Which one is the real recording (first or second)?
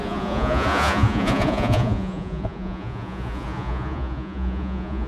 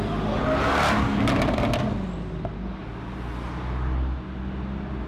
second